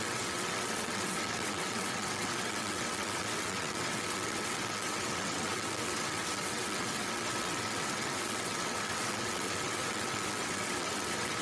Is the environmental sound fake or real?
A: fake